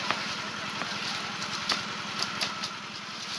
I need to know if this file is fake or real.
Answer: real